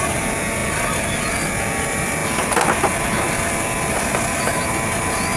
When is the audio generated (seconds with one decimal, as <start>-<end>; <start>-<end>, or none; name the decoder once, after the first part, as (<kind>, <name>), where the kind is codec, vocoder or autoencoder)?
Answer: none